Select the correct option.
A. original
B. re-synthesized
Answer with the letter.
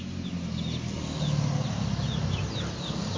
A